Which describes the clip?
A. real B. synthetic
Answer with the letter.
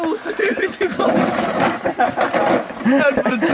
A